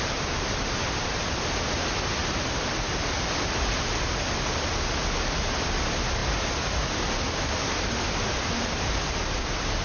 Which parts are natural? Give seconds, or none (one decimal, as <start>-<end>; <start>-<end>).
0.0-2.2; 3.0-9.8